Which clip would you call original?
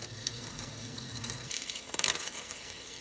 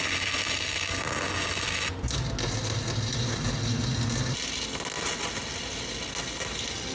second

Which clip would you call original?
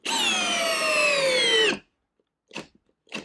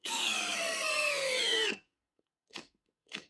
first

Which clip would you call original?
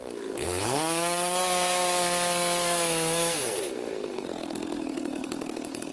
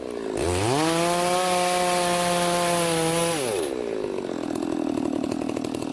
second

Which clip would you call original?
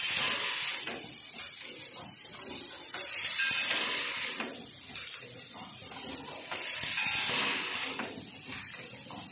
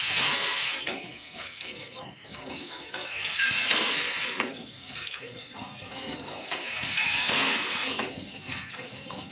first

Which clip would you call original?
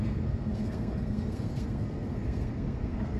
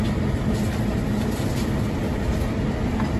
second